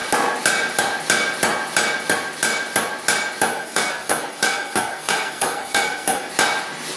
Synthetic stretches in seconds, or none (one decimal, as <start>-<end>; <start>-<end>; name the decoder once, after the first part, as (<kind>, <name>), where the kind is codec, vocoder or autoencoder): 3.5-6.3 (codec, SNAC)